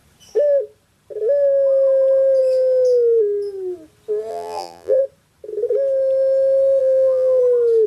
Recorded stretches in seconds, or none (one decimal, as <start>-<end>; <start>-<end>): 0.0-4.3; 5.0-6.8; 7.4-7.9